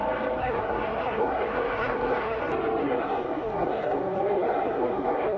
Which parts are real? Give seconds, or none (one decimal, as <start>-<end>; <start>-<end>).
0.0-0.4; 2.4-2.8